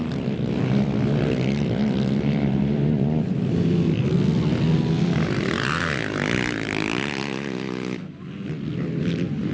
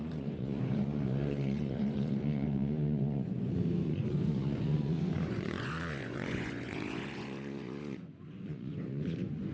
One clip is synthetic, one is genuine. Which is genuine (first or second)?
first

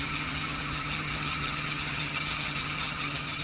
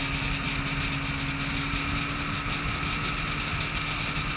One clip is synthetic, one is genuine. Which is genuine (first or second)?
second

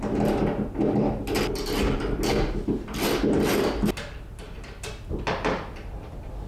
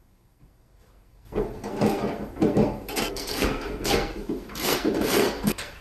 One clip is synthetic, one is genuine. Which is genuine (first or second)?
first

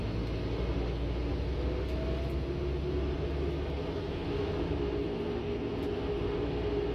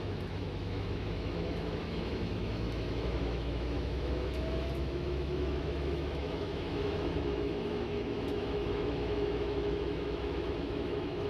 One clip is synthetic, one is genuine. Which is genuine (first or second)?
first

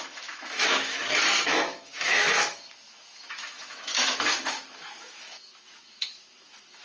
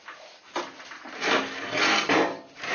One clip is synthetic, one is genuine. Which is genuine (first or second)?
second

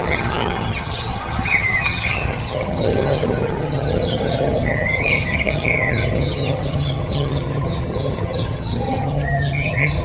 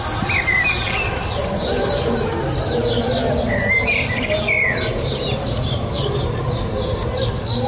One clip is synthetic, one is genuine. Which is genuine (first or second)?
second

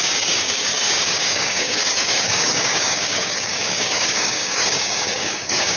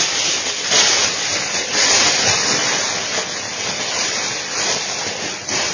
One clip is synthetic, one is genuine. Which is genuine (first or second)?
second